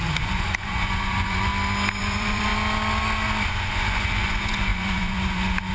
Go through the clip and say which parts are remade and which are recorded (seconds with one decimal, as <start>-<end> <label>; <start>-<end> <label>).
0.0-1.5 remade; 1.5-2.0 recorded; 2.0-2.5 remade; 2.5-3.5 recorded; 3.5-5.7 remade